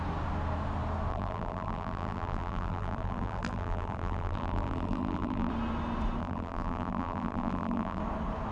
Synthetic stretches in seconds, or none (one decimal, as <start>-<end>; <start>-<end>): 1.1-5.5; 6.2-8.0